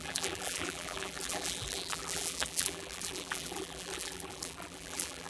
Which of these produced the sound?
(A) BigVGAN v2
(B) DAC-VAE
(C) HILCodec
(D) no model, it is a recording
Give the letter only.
A